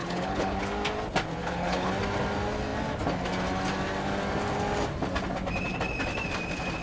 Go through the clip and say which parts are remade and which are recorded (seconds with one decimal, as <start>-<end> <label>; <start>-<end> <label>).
0.0-0.6 remade; 0.6-1.4 recorded; 1.4-1.9 remade; 1.9-6.8 recorded